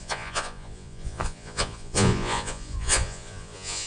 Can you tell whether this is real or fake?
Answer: fake